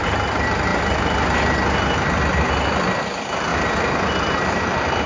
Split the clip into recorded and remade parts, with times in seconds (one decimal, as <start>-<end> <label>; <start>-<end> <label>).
0.0-5.1 recorded